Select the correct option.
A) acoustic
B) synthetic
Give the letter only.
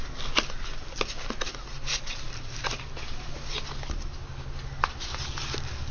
A